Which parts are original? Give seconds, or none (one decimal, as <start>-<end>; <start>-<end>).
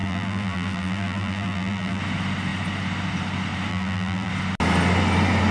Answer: 2.0-3.7; 4.3-5.5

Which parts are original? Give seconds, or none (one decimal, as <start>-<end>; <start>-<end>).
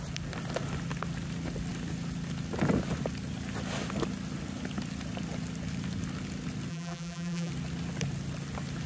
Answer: 0.0-6.7; 7.5-8.9